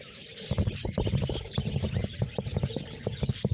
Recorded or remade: recorded